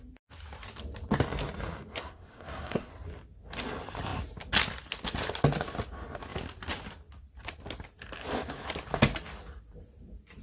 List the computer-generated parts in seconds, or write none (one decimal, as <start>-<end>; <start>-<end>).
2.0-2.9